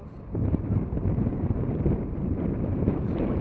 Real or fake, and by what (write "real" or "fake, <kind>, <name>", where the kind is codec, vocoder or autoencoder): fake, vocoder, BigVGAN v2